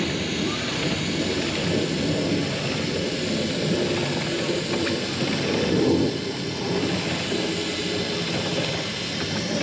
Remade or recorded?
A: recorded